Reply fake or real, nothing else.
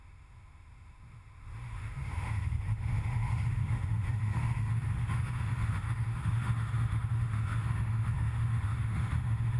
fake